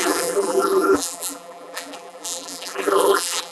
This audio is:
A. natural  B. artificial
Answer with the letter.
B